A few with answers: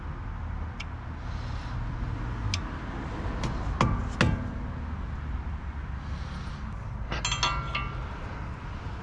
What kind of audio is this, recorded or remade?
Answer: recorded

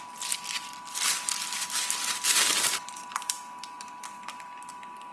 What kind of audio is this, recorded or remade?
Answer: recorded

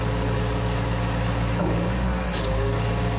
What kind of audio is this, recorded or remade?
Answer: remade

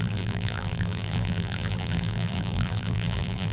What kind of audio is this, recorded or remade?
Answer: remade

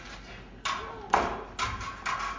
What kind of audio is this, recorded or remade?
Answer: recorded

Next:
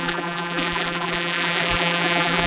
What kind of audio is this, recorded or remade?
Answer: remade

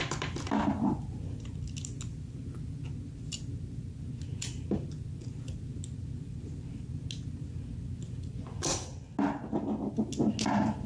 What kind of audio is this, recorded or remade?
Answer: recorded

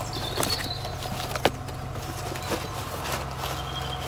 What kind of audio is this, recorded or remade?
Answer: recorded